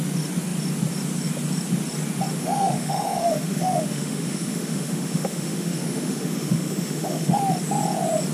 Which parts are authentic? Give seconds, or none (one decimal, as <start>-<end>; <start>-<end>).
0.0-2.4; 7.4-8.3